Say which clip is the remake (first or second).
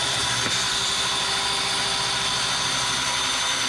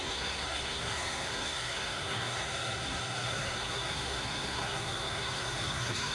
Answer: second